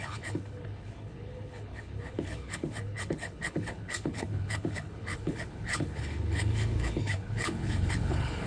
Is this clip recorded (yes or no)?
no